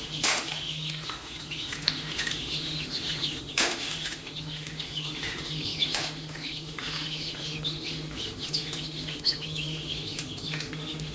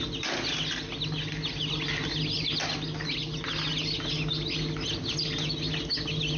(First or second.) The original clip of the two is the second